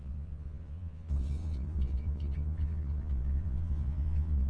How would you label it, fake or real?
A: fake